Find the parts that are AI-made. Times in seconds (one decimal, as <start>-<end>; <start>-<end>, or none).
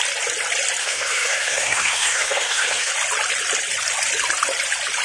0.8-2.9